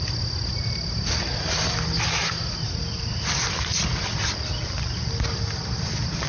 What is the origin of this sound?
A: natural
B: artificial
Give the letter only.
A